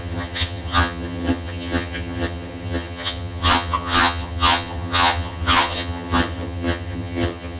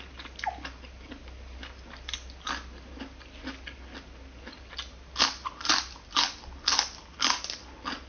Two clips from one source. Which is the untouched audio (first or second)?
second